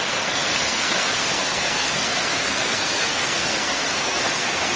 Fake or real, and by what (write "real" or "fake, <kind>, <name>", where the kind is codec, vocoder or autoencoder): fake, codec, SNAC